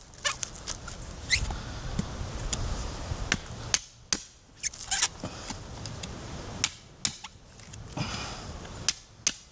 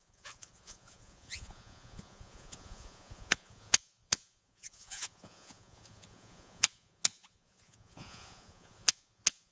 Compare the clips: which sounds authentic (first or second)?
first